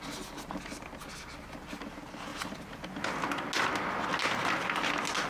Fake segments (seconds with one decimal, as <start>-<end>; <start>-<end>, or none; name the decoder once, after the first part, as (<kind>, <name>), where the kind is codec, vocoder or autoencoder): none